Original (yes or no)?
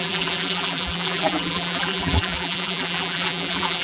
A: no